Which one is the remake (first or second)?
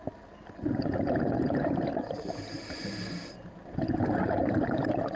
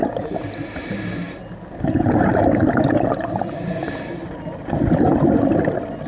first